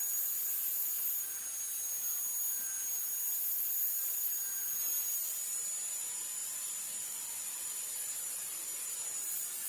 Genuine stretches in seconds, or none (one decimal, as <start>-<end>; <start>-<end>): 0.0-9.7